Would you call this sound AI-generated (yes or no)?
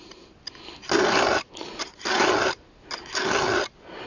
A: no